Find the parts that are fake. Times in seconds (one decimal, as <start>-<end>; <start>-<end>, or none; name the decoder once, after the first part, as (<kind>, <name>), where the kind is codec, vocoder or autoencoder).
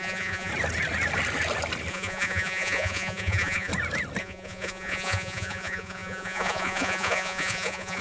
0.0-0.5 (vocoder, Vocos); 1.9-3.7; 4.2-8.0